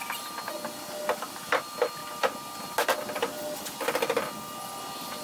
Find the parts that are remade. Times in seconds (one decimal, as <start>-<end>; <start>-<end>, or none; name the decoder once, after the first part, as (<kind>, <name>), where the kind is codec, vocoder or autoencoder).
none